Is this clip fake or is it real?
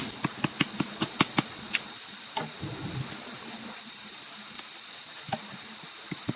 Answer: fake